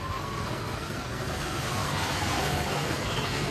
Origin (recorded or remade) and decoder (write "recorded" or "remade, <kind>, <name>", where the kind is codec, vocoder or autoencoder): remade, codec, SNAC